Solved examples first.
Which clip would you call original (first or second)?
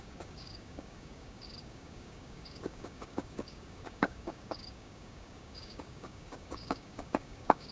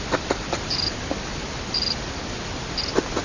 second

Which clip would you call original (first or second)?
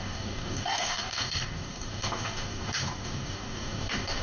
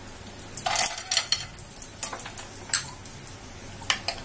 second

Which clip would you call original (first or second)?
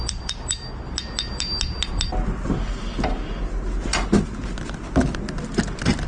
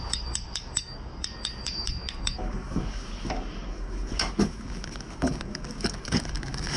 first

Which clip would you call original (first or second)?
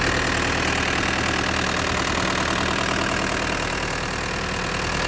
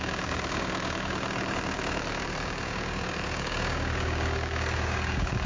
first